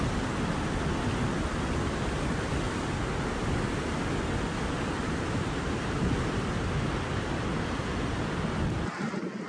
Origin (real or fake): real